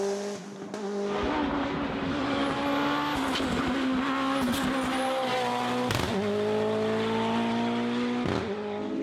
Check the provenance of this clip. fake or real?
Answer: real